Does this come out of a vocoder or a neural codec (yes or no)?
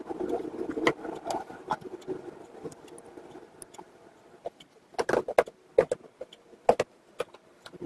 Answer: no